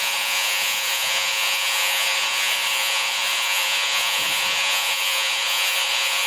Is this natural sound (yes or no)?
no